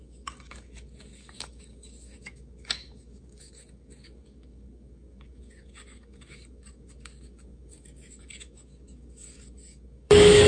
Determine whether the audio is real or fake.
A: fake